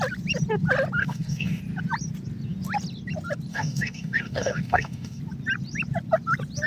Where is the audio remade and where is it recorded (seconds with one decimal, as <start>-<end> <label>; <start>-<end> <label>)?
0.0-1.0 recorded; 1.0-1.6 remade; 1.6-3.5 recorded; 3.5-5.2 remade; 5.2-6.7 recorded